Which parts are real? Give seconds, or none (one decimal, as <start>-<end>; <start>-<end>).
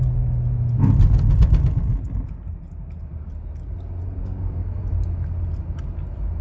0.0-4.2; 4.8-6.4